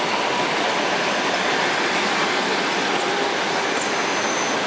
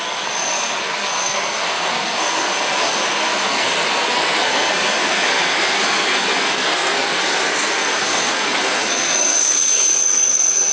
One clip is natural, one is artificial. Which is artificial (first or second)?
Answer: second